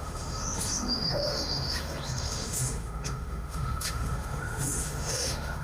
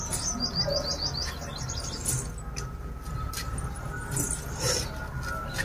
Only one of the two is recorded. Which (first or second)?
second